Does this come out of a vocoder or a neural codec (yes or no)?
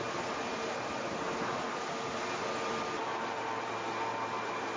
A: no